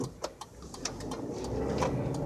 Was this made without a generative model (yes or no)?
yes